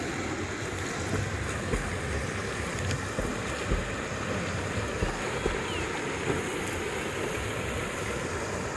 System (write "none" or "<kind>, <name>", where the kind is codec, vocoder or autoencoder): none